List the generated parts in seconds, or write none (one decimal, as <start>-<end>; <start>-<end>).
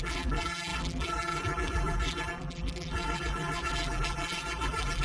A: 0.0-5.0